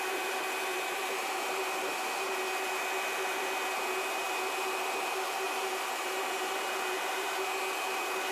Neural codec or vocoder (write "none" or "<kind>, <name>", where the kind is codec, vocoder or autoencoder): vocoder, BigVGAN v2